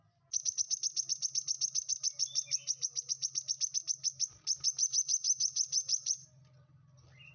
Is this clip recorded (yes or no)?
yes